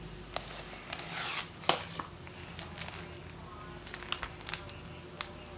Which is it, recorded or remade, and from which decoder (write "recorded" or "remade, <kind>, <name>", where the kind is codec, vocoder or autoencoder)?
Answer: recorded